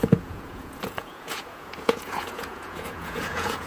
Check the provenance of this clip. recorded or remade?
remade